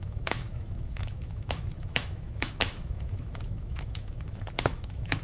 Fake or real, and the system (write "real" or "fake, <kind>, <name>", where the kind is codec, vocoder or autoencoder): fake, autoencoder, DAC-VAE